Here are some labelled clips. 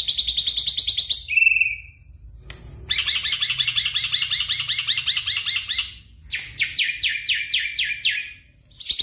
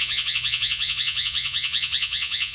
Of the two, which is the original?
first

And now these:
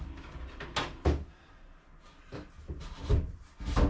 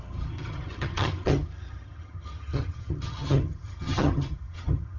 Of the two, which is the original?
first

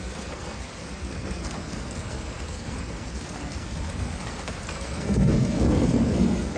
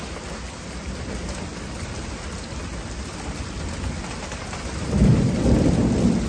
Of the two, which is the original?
second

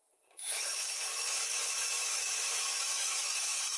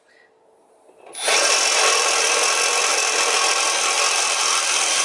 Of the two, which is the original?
second